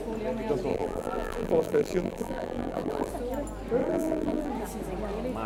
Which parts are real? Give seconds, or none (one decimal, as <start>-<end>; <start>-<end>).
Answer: 0.0-0.7; 3.1-3.8; 4.5-5.5